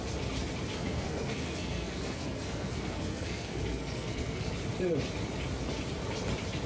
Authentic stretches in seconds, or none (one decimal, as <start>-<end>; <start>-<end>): 0.0-0.7; 4.5-6.7